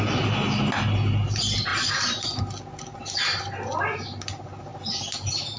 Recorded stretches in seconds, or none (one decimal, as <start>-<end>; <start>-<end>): 0.0-1.7; 2.4-2.9; 3.4-5.6